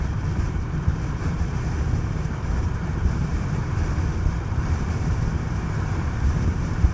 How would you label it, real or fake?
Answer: fake